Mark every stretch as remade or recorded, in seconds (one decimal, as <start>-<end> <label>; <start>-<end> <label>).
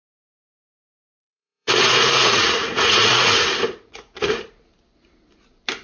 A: 0.0-1.0 recorded; 1.0-4.5 remade; 4.5-5.8 recorded